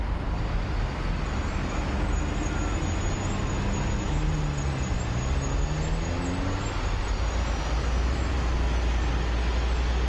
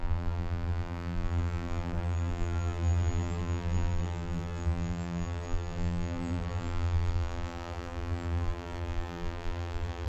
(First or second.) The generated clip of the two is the second